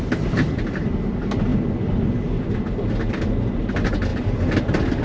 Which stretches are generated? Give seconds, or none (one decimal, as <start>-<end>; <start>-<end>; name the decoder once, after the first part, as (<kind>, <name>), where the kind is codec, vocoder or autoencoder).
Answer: none